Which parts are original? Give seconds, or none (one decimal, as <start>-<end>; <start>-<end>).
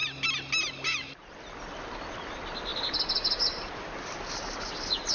0.0-5.1